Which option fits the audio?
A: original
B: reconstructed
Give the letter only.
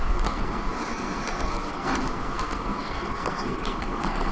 B